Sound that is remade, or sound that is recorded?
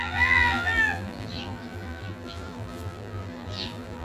remade